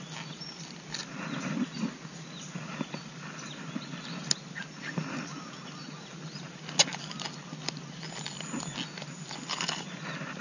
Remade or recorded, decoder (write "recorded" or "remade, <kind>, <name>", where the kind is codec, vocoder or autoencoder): recorded